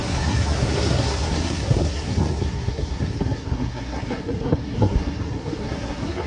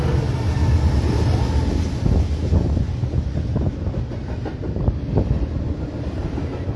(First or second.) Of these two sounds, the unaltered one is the second